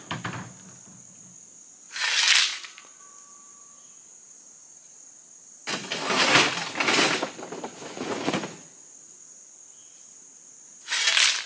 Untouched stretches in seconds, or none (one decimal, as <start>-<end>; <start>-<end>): 0.0-2.5; 3.0-7.8; 11.0-11.5